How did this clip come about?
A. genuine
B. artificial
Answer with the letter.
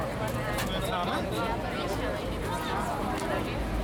A